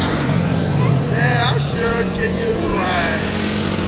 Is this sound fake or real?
fake